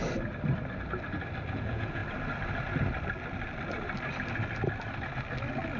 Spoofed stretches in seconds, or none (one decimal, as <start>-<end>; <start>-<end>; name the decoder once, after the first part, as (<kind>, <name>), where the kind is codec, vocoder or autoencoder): 1.5-2.0 (vocoder, Vocos)